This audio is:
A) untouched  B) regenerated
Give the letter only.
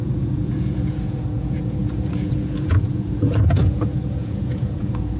B